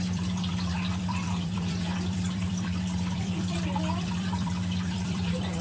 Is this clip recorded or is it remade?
remade